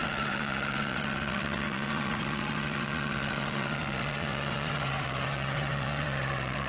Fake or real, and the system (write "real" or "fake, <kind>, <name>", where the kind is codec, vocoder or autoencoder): fake, vocoder, WaveNeXt